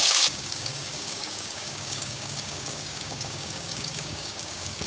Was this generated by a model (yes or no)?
yes